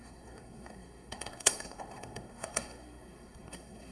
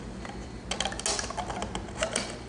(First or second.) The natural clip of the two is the second